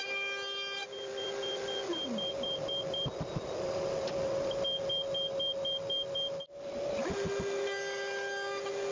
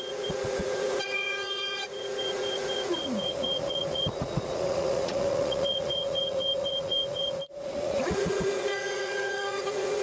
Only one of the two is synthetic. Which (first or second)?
second